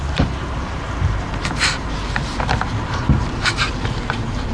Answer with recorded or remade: remade